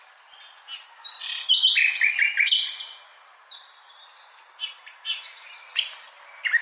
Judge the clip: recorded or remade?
recorded